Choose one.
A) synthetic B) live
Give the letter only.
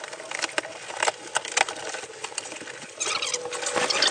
B